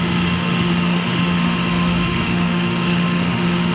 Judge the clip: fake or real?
fake